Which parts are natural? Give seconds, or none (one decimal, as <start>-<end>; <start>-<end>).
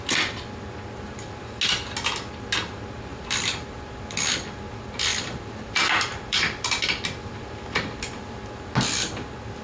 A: 0.0-3.1; 3.7-5.1; 8.2-9.6